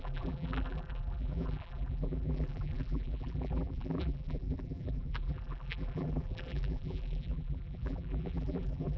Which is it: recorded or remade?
remade